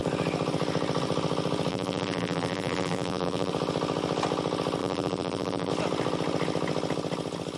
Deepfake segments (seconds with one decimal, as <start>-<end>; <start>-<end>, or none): 1.7-3.5; 4.8-5.7